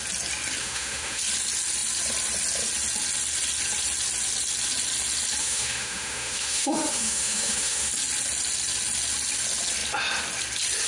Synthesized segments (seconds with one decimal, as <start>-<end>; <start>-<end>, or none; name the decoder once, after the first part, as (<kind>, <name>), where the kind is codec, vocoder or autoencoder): 0.6-1.2 (autoencoder, DAC-VAE); 5.4-7.9